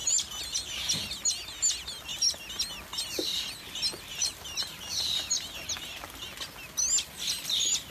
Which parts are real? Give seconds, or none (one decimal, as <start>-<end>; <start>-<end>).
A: 0.9-4.1; 5.7-7.9